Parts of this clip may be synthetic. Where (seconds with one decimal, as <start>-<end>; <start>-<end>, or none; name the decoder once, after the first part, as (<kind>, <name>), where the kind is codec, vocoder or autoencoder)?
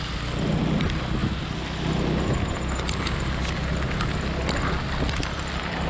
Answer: none